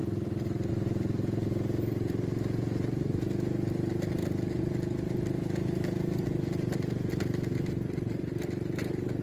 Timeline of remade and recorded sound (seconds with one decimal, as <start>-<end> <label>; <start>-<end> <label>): 0.0-9.2 recorded